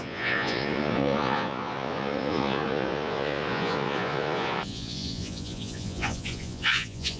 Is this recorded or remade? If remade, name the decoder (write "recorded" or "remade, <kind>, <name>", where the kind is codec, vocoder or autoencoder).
remade, vocoder, Vocos